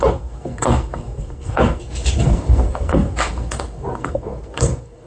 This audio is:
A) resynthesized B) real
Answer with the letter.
A